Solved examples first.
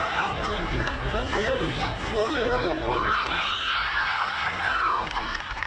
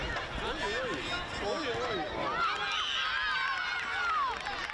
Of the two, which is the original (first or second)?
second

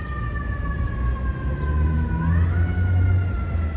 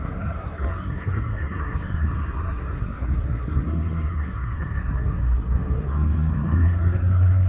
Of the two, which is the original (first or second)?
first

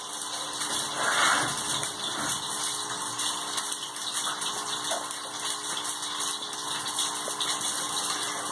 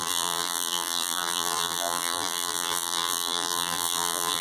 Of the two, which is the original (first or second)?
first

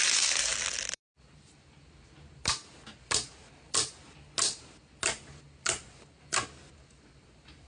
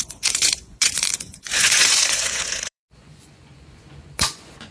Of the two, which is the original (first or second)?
first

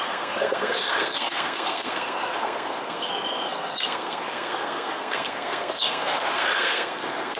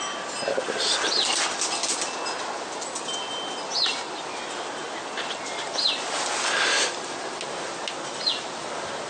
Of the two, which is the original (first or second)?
second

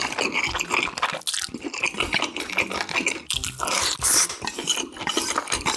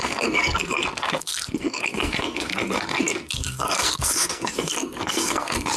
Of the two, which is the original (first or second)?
first